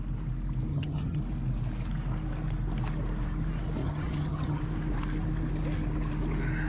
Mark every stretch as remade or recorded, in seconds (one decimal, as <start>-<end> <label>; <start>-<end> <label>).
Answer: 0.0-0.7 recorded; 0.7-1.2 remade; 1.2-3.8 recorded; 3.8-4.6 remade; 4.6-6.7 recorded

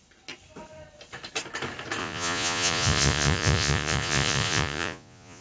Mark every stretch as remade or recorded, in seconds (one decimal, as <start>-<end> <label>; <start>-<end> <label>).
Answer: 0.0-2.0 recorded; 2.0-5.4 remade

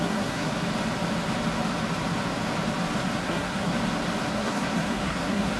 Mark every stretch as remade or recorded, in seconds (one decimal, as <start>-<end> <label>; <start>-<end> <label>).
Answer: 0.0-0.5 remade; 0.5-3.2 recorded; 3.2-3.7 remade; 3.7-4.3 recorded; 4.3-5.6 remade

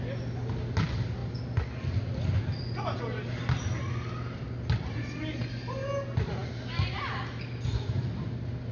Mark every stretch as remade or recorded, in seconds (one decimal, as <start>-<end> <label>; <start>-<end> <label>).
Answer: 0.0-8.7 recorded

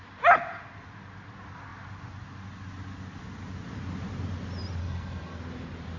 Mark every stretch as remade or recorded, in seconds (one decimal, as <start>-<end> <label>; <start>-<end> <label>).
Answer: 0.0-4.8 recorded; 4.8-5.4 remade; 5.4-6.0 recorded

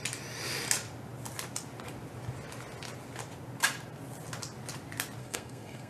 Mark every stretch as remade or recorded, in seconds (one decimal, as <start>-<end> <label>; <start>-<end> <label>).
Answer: 0.0-5.2 recorded; 5.2-5.9 remade

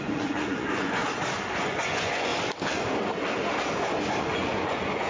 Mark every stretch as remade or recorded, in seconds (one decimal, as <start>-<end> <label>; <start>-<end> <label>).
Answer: 0.0-1.0 remade; 1.0-1.6 recorded; 1.6-2.3 remade; 2.3-4.2 recorded; 4.2-5.1 remade

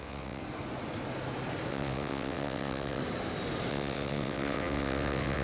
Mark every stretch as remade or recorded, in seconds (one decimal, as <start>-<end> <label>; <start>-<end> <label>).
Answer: 0.0-0.4 remade; 0.4-1.7 recorded; 1.7-3.0 remade; 3.0-3.7 recorded; 3.7-5.4 remade